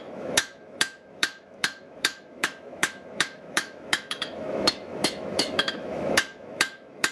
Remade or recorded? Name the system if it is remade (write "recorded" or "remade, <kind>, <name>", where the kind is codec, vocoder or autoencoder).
remade, autoencoder, DAC-VAE